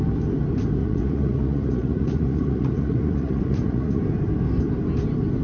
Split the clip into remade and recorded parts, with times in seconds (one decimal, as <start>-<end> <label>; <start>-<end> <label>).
0.0-0.8 recorded; 0.8-4.0 remade; 4.0-5.4 recorded

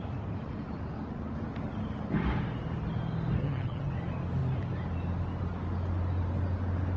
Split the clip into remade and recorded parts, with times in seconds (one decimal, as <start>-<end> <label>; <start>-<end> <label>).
0.0-3.4 recorded; 3.4-3.9 remade; 3.9-7.0 recorded

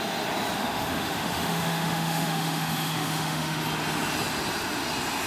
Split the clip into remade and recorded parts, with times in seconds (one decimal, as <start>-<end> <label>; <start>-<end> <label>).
0.0-0.6 recorded; 0.6-3.6 remade; 3.6-5.3 recorded

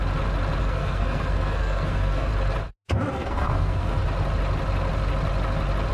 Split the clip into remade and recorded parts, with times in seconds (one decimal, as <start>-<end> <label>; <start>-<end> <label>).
0.0-0.6 recorded; 0.6-2.3 remade; 2.3-3.1 recorded; 3.1-4.0 remade; 4.0-5.9 recorded

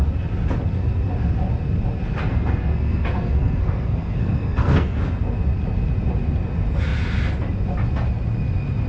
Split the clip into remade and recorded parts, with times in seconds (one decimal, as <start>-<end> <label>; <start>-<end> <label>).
0.0-2.2 recorded; 2.2-5.0 remade; 5.0-8.9 recorded

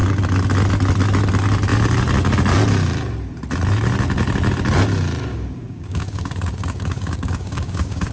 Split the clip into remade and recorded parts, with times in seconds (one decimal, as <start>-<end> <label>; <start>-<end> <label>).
0.0-5.3 recorded; 5.3-8.1 remade

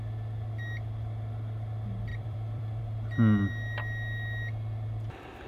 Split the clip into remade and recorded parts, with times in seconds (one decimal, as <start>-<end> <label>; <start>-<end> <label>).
0.0-2.1 recorded; 2.1-2.8 remade; 2.8-5.5 recorded